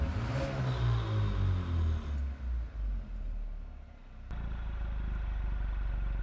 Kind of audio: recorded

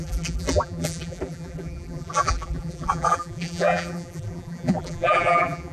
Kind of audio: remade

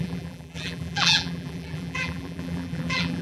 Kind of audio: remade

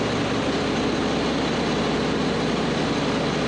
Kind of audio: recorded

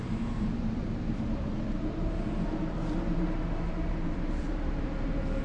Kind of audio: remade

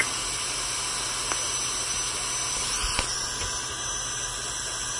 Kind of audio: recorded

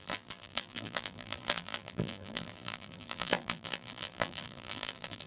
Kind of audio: remade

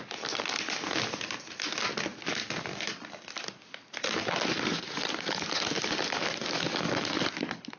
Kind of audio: recorded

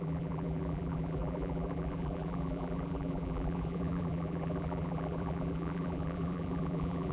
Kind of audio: remade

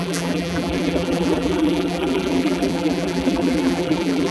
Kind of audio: remade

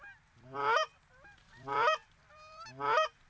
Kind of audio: remade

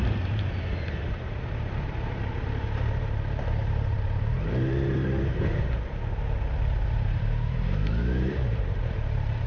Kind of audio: remade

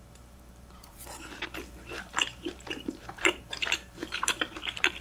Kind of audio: remade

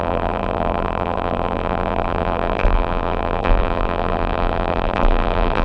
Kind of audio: remade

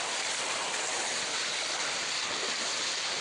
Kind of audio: remade